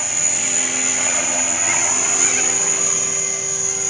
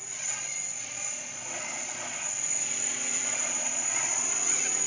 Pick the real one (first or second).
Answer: first